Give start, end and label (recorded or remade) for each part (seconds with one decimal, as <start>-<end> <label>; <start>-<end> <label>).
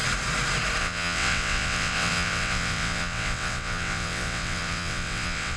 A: 0.0-0.8 recorded; 0.8-5.6 remade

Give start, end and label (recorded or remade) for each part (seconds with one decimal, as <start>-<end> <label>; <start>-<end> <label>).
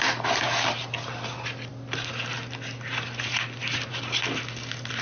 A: 0.0-5.0 recorded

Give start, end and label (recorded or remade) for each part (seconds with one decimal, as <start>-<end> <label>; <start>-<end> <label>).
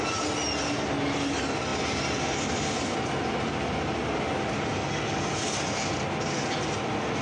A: 0.0-7.2 recorded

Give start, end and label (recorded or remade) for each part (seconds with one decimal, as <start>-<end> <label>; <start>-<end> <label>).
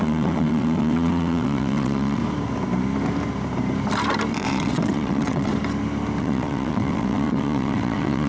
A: 0.0-2.2 remade; 2.2-4.3 recorded; 4.3-5.5 remade; 5.5-6.2 recorded; 6.2-8.3 remade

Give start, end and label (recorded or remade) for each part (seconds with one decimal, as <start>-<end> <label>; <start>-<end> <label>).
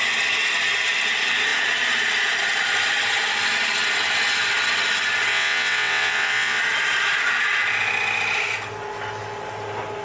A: 0.0-5.3 recorded; 5.3-6.6 remade; 6.6-10.0 recorded